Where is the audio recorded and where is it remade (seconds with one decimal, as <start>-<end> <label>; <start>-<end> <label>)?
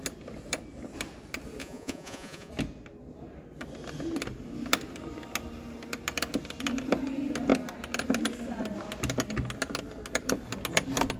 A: 0.0-1.6 recorded; 1.6-2.5 remade; 2.5-11.2 recorded